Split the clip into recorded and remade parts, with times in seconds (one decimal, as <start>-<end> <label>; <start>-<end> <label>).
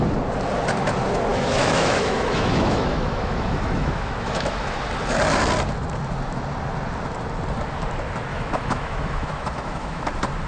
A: 0.0-1.3 recorded; 1.3-4.8 remade; 4.8-8.3 recorded; 8.3-10.0 remade; 10.0-10.5 recorded